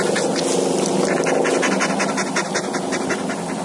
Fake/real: real